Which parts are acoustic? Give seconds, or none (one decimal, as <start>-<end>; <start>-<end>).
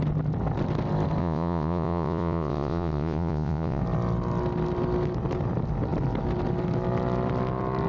0.0-1.2; 3.8-7.9